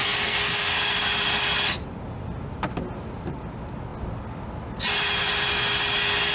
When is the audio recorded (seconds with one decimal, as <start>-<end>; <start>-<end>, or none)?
1.0-6.3